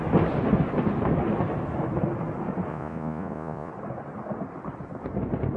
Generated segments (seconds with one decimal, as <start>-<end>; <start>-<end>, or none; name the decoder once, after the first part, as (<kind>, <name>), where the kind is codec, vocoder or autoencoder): 2.7-3.7 (vocoder, Vocos)